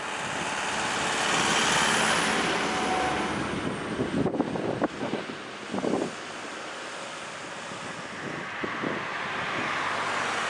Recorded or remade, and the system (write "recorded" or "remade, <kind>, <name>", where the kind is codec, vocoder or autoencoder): recorded